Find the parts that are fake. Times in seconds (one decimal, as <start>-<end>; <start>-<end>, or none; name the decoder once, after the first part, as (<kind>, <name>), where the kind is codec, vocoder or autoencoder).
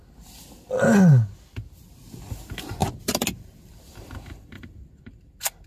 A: 2.8-3.7 (vocoder, BigVGAN v2)